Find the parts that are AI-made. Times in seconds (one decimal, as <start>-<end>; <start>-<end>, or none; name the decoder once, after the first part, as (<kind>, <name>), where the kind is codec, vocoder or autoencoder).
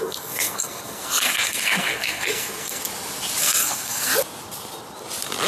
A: 0.0-2.8 (codec, SNAC); 3.4-4.1